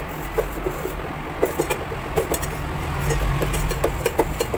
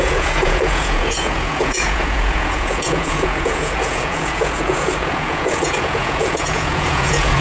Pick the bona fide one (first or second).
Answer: first